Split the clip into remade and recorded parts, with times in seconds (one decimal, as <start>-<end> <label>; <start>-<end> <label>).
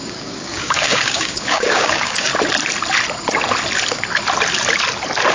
0.0-2.3 remade; 2.3-5.3 recorded